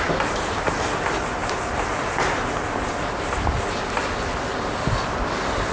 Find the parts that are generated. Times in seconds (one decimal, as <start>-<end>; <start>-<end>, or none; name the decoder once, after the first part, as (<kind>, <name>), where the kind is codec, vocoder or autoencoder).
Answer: none